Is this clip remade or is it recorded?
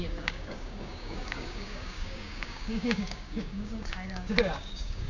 remade